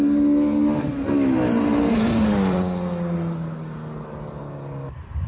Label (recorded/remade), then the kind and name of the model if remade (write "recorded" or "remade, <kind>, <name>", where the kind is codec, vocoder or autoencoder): recorded